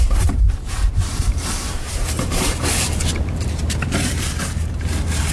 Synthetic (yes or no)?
yes